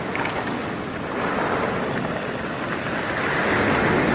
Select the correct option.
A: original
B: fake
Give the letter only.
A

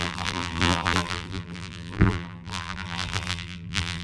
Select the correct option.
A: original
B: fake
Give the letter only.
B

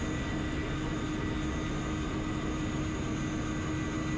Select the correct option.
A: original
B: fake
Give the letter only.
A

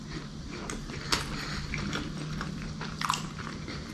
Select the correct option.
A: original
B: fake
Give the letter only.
A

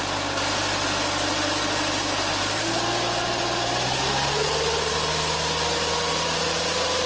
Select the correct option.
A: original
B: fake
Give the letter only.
A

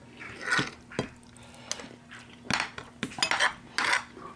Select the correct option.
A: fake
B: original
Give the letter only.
B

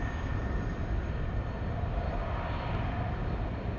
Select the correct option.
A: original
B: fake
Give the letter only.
A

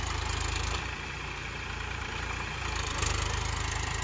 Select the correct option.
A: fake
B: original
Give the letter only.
A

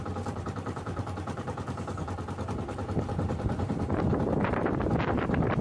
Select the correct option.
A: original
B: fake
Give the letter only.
B